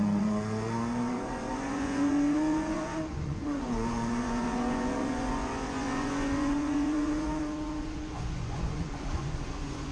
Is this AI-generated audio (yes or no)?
yes